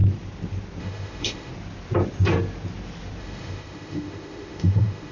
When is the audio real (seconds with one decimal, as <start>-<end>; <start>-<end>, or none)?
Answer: 0.0-0.8; 1.5-3.2